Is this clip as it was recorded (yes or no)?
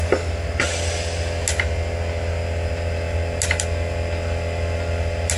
yes